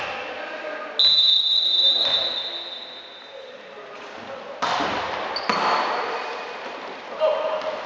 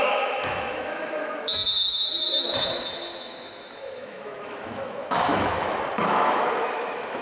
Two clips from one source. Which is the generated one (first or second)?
second